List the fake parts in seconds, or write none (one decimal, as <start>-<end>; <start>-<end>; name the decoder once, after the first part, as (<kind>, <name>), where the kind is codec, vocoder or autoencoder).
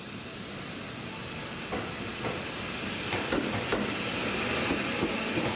none